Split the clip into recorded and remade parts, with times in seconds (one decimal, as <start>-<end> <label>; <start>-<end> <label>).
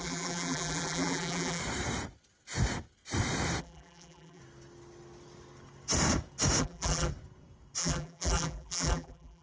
0.0-1.6 remade; 1.6-3.6 recorded; 3.6-4.4 remade; 4.4-6.6 recorded; 6.6-7.1 remade; 7.1-7.8 recorded; 7.8-9.4 remade